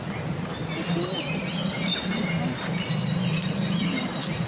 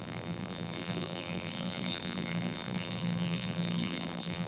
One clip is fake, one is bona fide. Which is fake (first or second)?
second